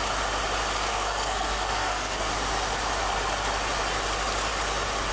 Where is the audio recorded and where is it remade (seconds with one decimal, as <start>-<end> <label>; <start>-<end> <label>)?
0.0-0.9 recorded; 0.9-2.3 remade; 2.3-5.1 recorded